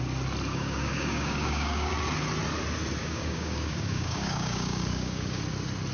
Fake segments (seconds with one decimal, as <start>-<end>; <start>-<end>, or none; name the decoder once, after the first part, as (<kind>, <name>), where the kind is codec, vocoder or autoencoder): 0.5-1.9 (codec, DAC); 3.0-5.4